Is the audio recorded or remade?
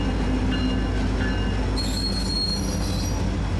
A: recorded